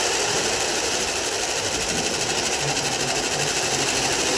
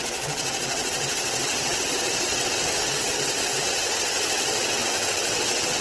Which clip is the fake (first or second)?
second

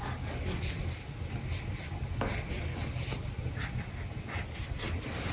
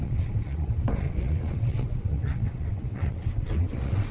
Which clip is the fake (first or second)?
second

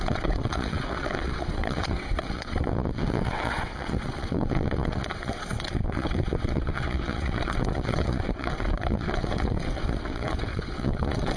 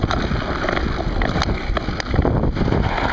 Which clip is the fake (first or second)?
first